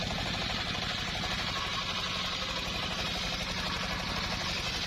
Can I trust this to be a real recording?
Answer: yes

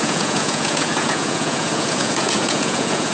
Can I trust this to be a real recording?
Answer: no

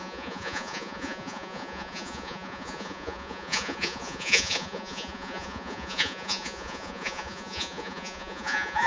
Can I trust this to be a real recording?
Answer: no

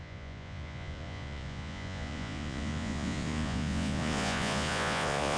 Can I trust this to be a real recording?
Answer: no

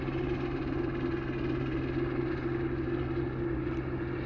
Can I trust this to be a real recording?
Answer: yes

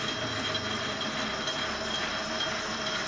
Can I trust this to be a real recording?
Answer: yes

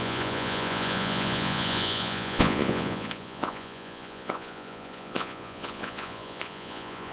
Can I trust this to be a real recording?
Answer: no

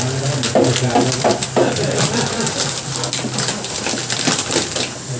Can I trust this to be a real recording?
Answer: yes